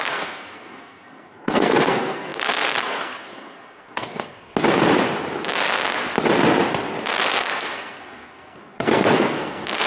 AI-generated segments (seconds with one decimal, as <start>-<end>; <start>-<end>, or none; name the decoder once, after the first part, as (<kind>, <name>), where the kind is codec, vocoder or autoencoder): 0.0-4.5 (codec, SNAC); 7.3-9.9